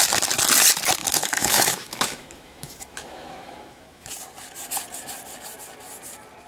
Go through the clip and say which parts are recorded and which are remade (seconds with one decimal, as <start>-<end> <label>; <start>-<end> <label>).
0.0-1.0 recorded; 1.0-4.1 remade; 4.1-6.5 recorded